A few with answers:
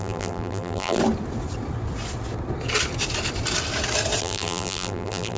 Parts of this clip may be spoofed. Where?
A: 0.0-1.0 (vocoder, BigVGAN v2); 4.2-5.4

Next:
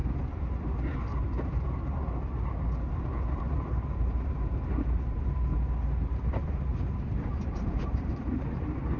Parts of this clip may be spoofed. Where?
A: 3.0-5.5 (vocoder, BigVGAN v2); 6.3-9.0

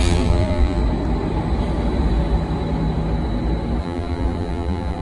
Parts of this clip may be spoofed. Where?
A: 0.0-0.8 (vocoder, BigVGAN v2); 3.8-5.0

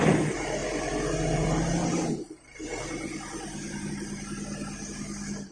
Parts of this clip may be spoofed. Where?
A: none